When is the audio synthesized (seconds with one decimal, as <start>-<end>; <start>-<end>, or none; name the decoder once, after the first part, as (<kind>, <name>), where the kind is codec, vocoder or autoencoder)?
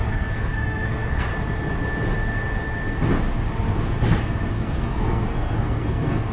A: 0.0-1.3 (codec, SNAC); 4.5-6.3